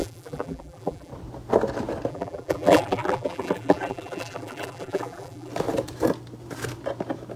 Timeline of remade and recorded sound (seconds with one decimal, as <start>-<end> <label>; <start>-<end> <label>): 0.0-1.1 remade; 1.1-2.1 recorded; 2.1-5.5 remade; 5.5-7.4 recorded